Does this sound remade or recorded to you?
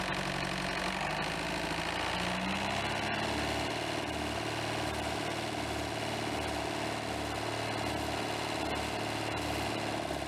recorded